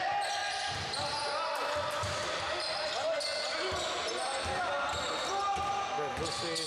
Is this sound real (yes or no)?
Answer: yes